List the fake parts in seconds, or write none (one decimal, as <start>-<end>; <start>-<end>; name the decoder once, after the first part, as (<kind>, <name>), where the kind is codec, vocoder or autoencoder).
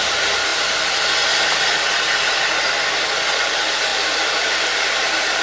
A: 3.9-4.5 (vocoder, BigVGAN v2)